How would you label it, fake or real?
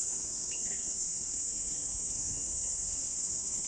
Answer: fake